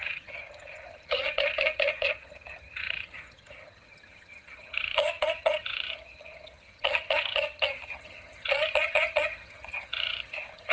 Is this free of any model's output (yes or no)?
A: no